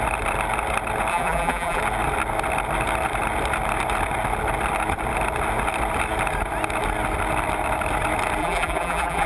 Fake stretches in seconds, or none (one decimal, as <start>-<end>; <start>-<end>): 1.1-1.8; 8.4-9.3